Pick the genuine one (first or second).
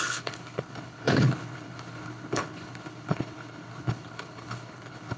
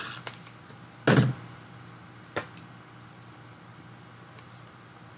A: second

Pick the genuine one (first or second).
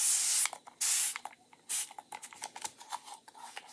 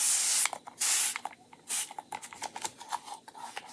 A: first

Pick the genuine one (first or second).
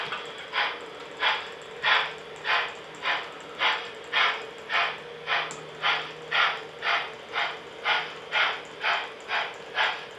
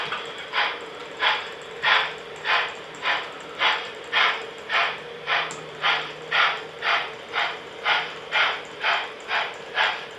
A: first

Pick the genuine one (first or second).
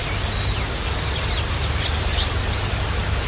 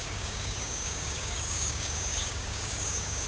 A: first